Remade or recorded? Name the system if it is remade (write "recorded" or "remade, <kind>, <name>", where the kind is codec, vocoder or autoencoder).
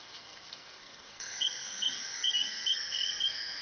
remade, codec, SNAC